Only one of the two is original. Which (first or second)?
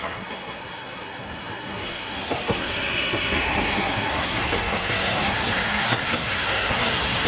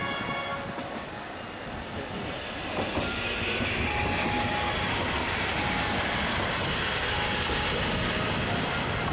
second